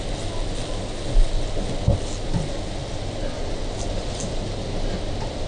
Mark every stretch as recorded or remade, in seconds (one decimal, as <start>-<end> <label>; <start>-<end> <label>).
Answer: 0.0-5.5 recorded